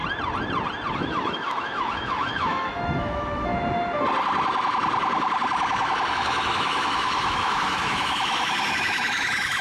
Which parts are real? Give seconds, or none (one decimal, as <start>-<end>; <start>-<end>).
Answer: 0.0-0.9; 3.5-6.1